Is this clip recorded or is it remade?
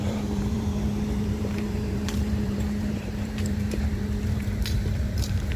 remade